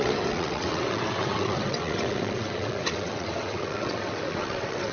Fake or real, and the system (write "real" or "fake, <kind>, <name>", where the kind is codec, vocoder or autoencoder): fake, vocoder, WaveNeXt